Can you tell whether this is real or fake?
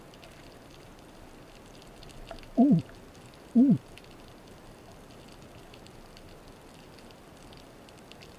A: real